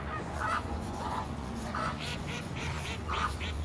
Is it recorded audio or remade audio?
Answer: remade